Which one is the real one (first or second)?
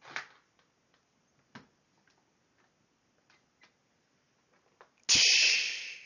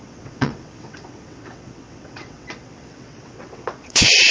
first